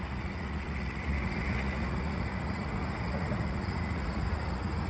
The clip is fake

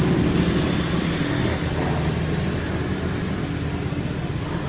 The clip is real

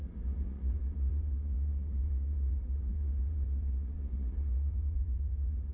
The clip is fake